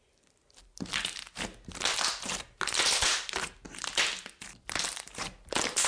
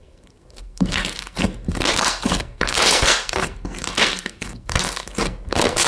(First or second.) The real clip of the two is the first